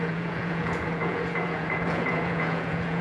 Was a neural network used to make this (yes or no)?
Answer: yes